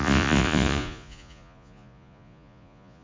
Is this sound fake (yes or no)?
yes